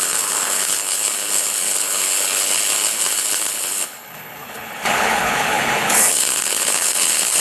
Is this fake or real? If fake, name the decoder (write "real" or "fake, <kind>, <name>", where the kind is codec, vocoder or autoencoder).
fake, codec, HILCodec